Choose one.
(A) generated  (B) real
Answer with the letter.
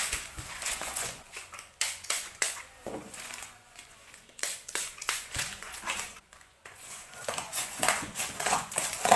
A